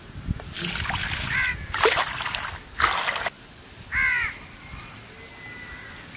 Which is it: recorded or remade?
recorded